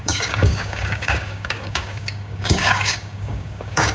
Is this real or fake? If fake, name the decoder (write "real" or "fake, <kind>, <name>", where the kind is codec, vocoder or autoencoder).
fake, codec, DAC